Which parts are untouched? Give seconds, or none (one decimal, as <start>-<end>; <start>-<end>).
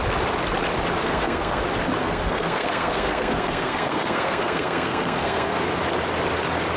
0.0-1.0; 1.6-2.0; 5.7-6.8